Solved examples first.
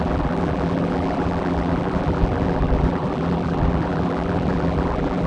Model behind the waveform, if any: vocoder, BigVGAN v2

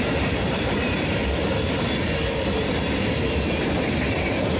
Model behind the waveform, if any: vocoder, BigVGAN v2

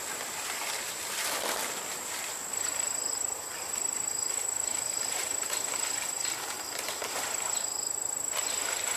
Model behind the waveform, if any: vocoder, BigVGAN v2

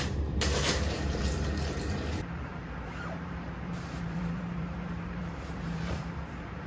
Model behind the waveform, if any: vocoder, BigVGAN v2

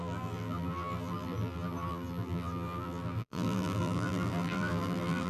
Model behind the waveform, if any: vocoder, BigVGAN v2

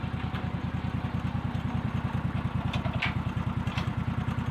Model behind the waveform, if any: none